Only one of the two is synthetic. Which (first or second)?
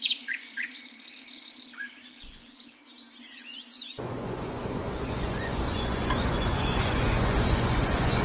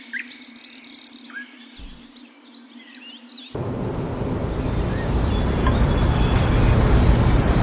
first